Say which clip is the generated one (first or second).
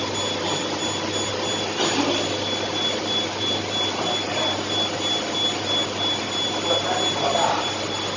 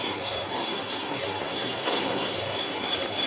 second